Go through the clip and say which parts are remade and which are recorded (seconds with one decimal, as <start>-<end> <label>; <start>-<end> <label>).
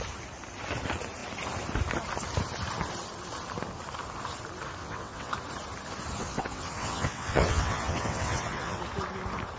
0.0-4.8 recorded; 4.8-5.3 remade; 5.3-6.2 recorded; 6.2-8.8 remade; 8.8-9.6 recorded